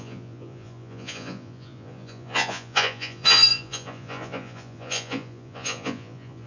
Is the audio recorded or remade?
remade